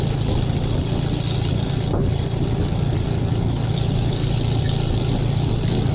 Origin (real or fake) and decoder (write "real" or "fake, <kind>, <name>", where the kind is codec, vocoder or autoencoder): real